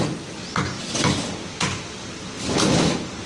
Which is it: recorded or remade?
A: recorded